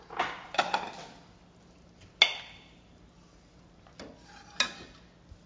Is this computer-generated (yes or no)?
no